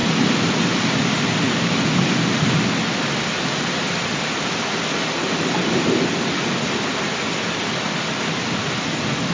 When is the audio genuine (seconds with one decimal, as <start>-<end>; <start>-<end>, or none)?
0.0-9.3